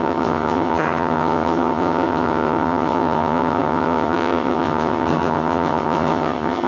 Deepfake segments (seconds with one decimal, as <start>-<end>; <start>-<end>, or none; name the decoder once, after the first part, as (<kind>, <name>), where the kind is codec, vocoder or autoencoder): 0.0-6.7 (vocoder, HiFi-GAN)